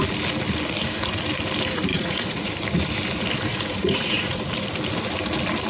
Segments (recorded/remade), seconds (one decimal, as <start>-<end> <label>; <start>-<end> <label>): 0.0-1.9 recorded; 1.9-2.5 remade; 2.5-3.5 recorded; 3.5-4.4 remade; 4.4-5.7 recorded